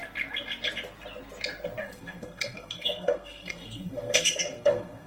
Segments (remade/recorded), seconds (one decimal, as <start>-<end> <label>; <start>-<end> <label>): 0.0-1.8 recorded; 1.8-5.1 remade